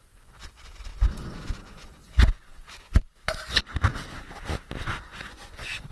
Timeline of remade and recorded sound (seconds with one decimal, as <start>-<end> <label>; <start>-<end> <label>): 0.0-3.6 remade; 3.6-4.8 recorded; 4.8-5.9 remade